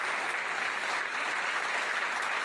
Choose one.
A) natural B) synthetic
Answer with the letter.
A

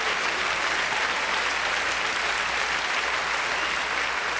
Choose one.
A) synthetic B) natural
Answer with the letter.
B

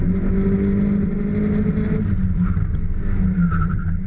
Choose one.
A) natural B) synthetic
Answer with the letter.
A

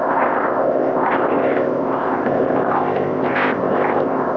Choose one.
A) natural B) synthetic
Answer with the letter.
B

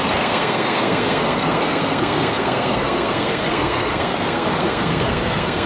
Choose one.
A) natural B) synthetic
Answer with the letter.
B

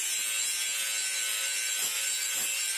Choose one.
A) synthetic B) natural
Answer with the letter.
B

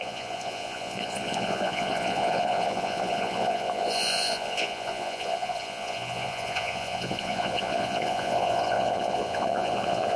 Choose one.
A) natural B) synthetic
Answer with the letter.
B